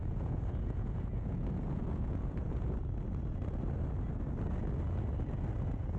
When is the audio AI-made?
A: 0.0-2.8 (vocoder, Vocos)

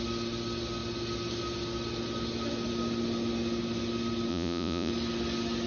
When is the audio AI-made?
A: 4.3-4.9 (vocoder, Vocos)

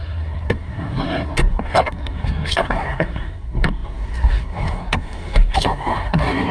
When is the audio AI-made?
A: 0.0-6.5 (codec, SNAC)

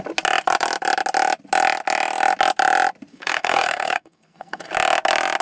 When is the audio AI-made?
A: 3.1-4.7 (codec, SNAC)

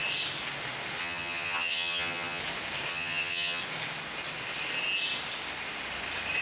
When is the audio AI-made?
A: 1.0-2.4 (vocoder, HiFi-GAN); 2.9-3.6

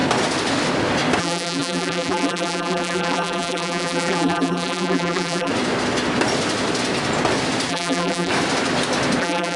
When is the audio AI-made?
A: 1.2-5.5 (vocoder, BigVGAN v2); 7.7-8.3; 9.2-9.6

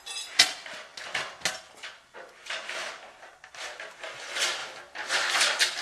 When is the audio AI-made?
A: none